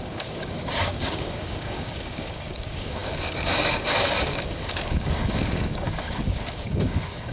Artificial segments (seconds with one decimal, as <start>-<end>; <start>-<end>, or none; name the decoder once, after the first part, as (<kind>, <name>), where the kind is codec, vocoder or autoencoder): 0.0-7.3 (codec, DAC)